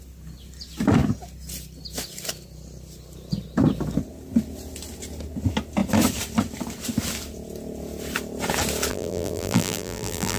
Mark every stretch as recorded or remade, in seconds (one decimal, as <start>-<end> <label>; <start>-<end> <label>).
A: 0.0-8.9 recorded; 8.9-10.4 remade